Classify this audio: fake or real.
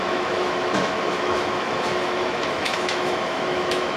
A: fake